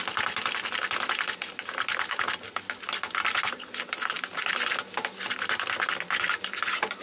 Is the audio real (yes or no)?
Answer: yes